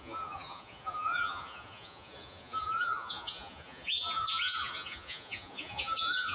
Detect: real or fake fake